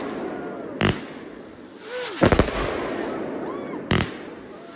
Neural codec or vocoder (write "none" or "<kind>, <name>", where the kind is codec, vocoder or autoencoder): none